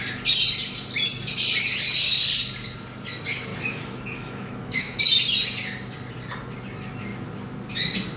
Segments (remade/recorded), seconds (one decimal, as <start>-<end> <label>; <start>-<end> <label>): 0.0-3.5 recorded; 3.5-5.0 remade; 5.0-8.2 recorded